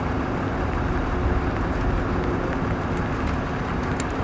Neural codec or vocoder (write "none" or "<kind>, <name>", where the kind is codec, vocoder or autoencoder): none